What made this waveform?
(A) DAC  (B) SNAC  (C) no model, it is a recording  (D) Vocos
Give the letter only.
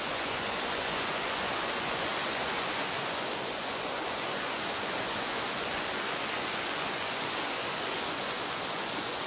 D